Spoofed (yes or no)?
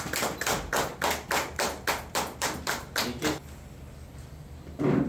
no